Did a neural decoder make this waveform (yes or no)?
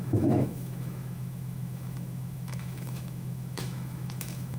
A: yes